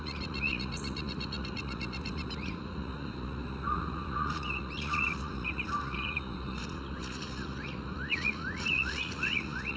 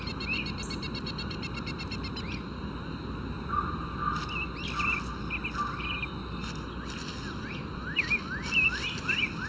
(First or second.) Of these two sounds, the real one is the second